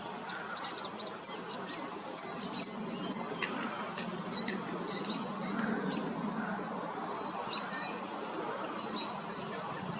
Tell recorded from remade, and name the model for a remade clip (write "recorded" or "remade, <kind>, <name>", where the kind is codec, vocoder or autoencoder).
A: recorded